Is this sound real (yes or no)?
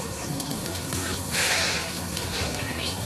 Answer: no